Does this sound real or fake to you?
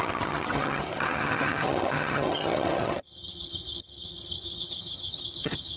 fake